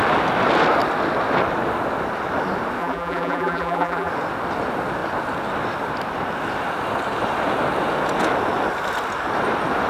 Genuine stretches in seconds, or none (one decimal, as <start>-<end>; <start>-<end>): 0.0-2.8; 4.1-9.9

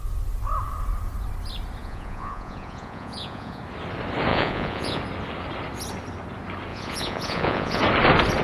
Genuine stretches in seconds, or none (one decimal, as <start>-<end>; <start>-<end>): 0.0-1.8; 3.6-4.3; 5.0-6.7; 7.8-8.4

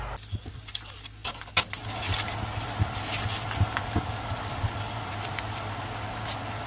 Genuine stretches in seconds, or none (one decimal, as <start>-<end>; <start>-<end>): 0.0-6.7

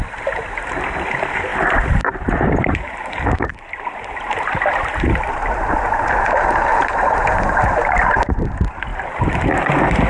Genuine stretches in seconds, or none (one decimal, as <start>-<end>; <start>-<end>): 0.0-10.1

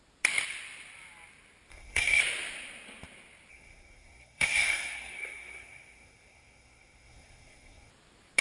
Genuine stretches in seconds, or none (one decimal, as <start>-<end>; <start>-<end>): 0.0-1.7; 2.2-3.5; 7.9-8.4

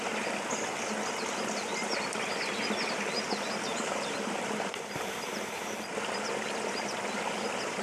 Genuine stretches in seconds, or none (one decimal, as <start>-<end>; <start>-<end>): 0.0-3.7; 5.7-7.8